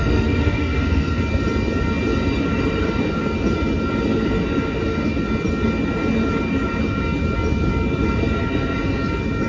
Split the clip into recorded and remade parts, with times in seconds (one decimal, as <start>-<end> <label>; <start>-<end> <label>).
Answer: 0.0-1.2 remade; 1.2-9.5 recorded

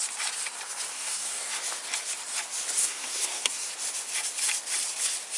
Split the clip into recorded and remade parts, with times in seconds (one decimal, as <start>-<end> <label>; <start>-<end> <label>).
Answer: 0.0-0.9 recorded; 0.9-1.6 remade; 1.6-2.8 recorded; 2.8-3.7 remade; 3.7-5.4 recorded

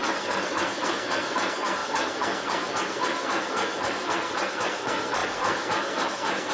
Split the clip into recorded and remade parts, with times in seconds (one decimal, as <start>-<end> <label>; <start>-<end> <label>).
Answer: 0.0-6.5 remade

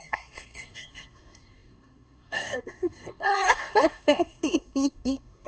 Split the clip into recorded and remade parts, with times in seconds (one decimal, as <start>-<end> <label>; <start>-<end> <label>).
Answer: 0.0-5.5 remade